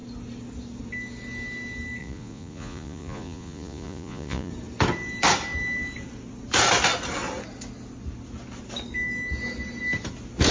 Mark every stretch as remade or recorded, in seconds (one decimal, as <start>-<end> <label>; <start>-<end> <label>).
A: 0.0-2.0 recorded; 2.0-4.5 remade; 4.5-10.5 recorded